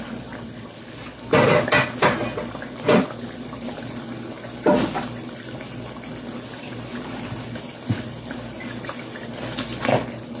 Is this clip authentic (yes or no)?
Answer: yes